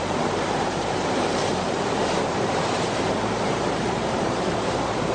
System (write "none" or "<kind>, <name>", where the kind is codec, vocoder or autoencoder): vocoder, BigVGAN v2